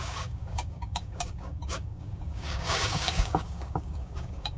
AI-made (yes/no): yes